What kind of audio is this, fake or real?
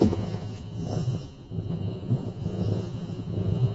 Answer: fake